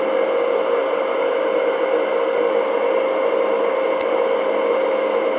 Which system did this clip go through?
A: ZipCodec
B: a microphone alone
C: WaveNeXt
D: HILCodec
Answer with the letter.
B